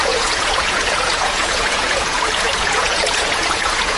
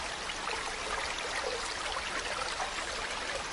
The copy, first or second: first